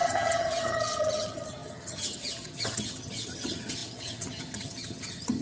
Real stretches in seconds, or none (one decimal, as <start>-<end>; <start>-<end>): none

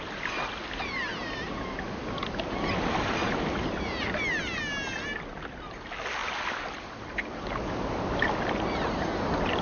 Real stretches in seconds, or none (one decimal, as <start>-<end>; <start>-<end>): 0.0-9.6

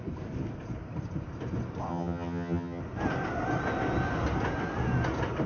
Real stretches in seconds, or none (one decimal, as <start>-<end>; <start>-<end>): 0.0-1.9; 2.8-5.5

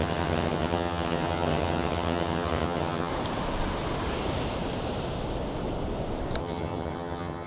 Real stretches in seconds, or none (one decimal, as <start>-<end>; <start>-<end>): 3.1-6.4

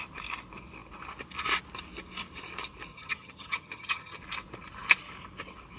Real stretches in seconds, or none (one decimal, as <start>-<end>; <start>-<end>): 0.0-2.9; 4.2-5.8

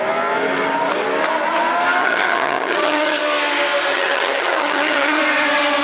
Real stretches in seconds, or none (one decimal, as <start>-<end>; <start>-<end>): 0.0-2.0; 3.2-3.9; 5.2-5.8

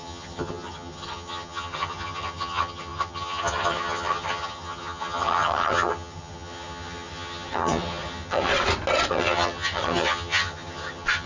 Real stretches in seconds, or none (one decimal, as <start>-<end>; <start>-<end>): 8.5-9.1